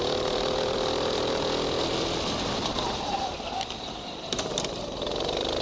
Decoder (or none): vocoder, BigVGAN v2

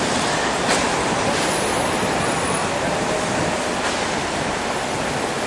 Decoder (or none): none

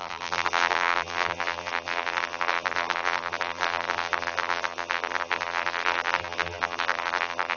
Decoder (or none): vocoder, BigVGAN v2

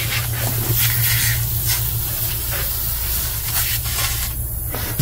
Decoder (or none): none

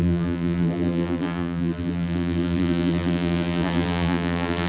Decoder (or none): vocoder, BigVGAN v2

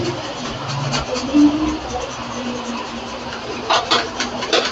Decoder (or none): vocoder, BigVGAN v2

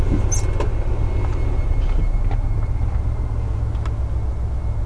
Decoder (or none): none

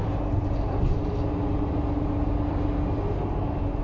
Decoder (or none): none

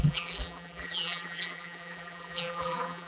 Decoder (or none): vocoder, BigVGAN v2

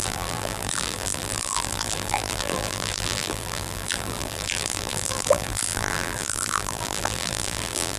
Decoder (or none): vocoder, BigVGAN v2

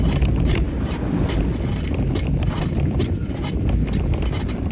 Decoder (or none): none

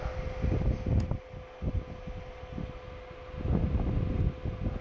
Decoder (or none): none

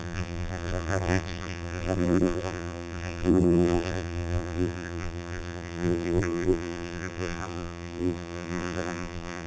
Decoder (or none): vocoder, BigVGAN v2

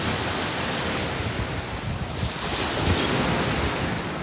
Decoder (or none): none